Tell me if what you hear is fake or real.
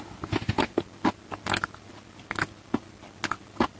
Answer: real